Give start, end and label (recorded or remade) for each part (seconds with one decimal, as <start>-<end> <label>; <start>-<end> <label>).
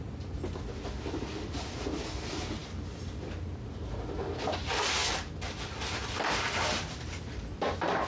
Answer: 0.0-8.1 recorded